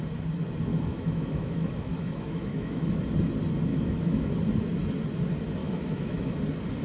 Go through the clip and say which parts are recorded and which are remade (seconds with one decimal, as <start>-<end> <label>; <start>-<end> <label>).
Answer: 0.0-0.7 recorded; 0.7-3.0 remade; 3.0-3.7 recorded; 3.7-4.3 remade; 4.3-5.6 recorded; 5.6-6.3 remade; 6.3-6.8 recorded